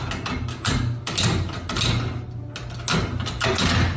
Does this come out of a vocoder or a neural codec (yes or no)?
no